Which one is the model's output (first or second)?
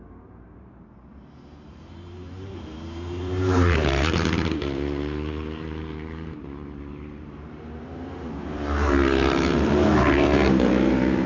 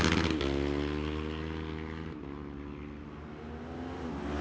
first